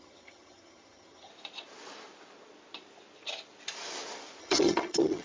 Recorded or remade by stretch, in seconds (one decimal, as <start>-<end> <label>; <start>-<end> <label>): 0.0-1.3 remade; 1.3-4.4 recorded; 4.4-5.2 remade